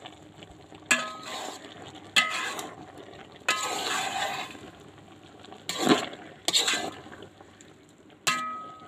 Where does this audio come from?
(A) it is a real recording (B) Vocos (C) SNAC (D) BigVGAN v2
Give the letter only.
A